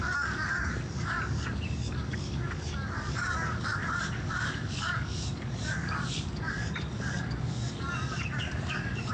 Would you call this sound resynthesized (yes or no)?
yes